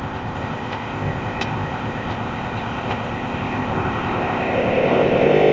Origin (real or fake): fake